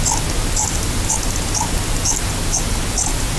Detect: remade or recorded recorded